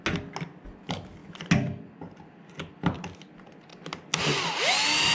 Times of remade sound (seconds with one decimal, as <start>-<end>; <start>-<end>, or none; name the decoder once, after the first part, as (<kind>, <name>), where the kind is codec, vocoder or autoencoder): none